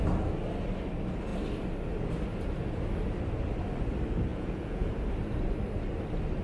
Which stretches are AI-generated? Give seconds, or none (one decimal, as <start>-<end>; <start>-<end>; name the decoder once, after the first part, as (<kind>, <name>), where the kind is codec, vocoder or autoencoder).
4.3-4.9 (vocoder, Vocos)